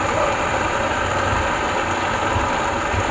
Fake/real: real